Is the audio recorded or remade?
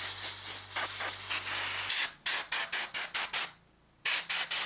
recorded